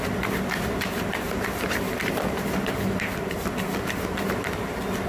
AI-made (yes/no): yes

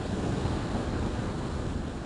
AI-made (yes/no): yes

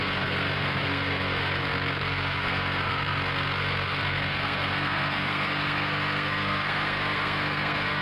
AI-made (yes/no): yes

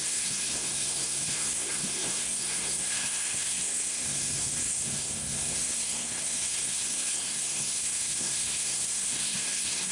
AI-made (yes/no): yes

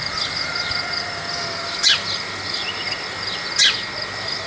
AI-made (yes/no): no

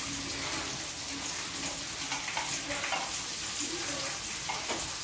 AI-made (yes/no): no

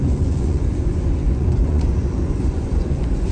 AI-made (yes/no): yes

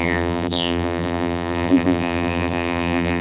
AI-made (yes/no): yes